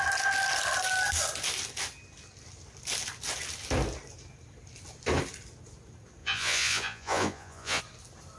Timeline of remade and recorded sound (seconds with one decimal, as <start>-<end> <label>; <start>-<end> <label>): 0.0-6.2 recorded; 6.2-7.8 remade; 7.8-8.4 recorded